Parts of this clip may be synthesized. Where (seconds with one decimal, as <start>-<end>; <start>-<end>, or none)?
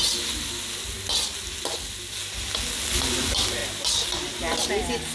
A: none